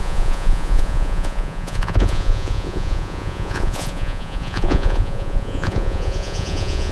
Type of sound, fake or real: fake